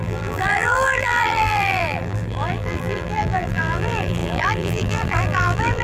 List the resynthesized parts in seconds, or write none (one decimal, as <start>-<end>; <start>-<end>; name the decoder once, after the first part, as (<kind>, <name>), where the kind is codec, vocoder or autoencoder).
0.0-5.8 (vocoder, BigVGAN v2)